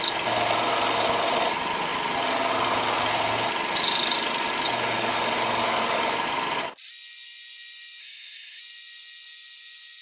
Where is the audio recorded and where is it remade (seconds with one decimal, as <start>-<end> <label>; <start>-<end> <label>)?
0.0-8.0 recorded; 8.0-8.6 remade; 8.6-10.0 recorded